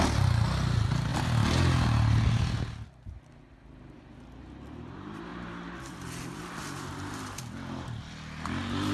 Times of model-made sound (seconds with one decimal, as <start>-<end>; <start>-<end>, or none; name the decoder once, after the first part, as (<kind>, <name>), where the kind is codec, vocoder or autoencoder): none